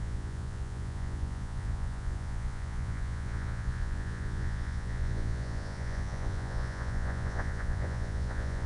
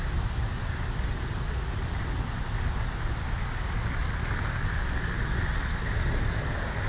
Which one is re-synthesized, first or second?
first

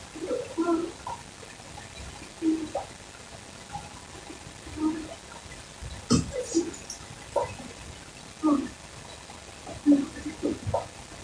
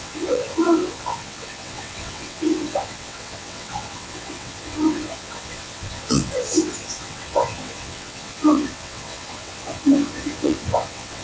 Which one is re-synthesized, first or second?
second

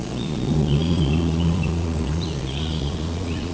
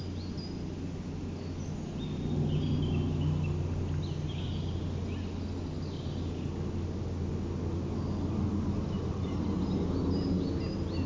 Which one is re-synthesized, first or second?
first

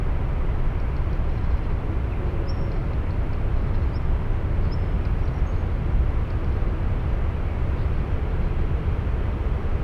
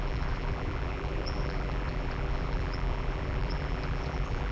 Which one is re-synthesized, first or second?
second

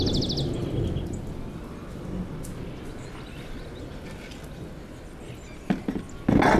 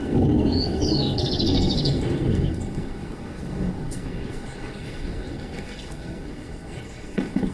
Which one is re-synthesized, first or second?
second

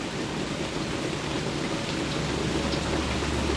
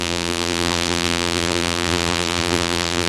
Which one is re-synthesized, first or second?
second